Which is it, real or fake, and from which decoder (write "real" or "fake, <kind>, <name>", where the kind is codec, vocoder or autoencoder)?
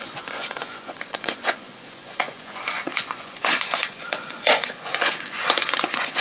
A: fake, vocoder, Vocos